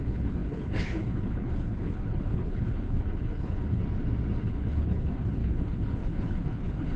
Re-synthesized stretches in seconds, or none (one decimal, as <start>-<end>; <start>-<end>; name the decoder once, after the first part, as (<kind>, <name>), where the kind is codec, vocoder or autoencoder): 0.0-3.8 (codec, HILCodec); 4.4-7.0